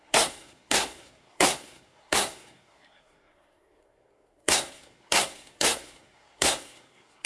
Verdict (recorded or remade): remade